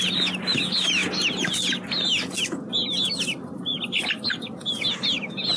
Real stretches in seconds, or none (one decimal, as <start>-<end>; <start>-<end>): 0.0-5.6